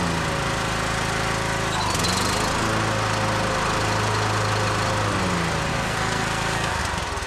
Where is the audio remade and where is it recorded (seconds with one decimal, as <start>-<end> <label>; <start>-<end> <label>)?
0.0-5.7 recorded; 5.7-6.8 remade; 6.8-7.3 recorded